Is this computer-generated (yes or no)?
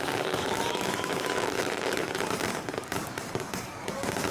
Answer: yes